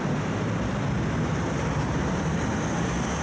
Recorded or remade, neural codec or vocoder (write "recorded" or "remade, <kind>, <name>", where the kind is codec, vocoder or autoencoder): recorded